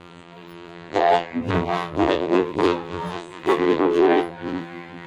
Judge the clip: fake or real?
fake